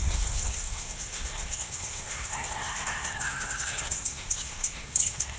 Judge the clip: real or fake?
fake